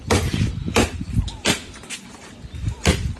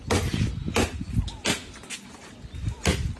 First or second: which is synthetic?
first